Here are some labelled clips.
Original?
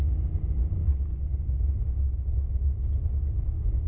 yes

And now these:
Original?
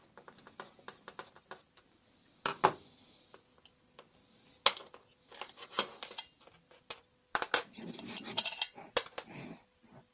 yes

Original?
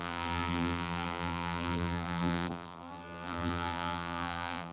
no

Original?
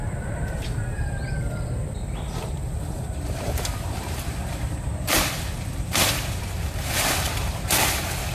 no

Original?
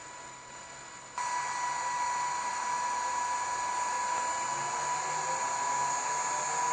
yes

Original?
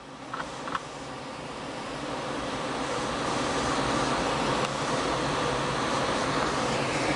yes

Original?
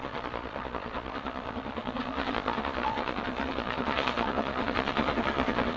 no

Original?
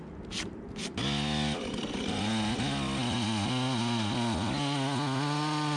yes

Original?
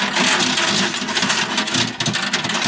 yes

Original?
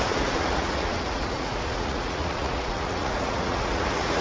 no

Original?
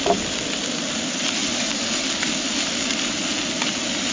yes